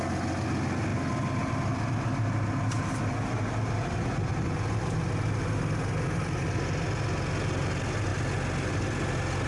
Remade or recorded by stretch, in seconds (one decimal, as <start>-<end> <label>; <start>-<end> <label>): 0.0-9.5 recorded

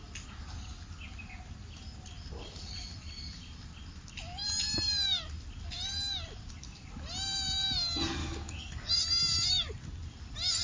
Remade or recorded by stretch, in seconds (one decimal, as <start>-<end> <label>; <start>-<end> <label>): 0.0-8.2 recorded; 8.2-8.9 remade; 8.9-10.6 recorded

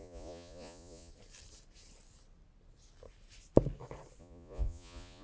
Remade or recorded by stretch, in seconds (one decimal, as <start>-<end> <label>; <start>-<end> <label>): 0.0-1.1 remade; 1.1-4.2 recorded; 4.2-5.2 remade

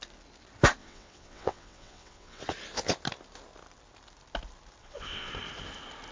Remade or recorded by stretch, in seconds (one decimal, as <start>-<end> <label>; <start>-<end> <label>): 0.0-0.8 recorded; 0.8-2.4 remade; 2.4-4.8 recorded; 4.8-5.3 remade; 5.3-6.1 recorded

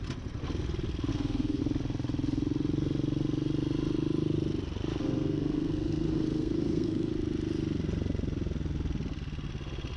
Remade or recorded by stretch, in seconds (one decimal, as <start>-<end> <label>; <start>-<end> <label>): 0.0-1.1 recorded; 1.1-1.6 remade; 1.6-5.0 recorded; 5.0-7.1 remade; 7.1-10.0 recorded